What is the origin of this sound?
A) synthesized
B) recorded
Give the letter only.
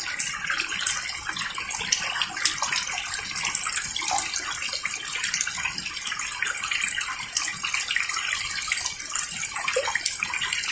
B